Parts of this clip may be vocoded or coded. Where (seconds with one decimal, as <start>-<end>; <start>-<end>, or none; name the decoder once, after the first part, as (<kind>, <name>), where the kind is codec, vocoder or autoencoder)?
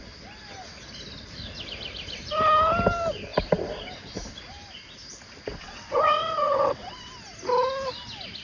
5.5-7.1 (vocoder, WaveNeXt)